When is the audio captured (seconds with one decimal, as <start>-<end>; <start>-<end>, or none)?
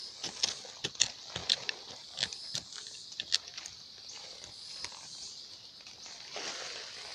0.0-7.1